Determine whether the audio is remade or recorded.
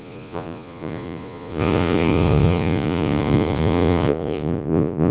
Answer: remade